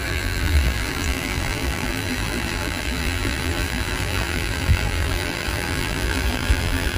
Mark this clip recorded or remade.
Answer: remade